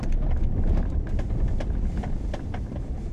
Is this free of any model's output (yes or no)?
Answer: yes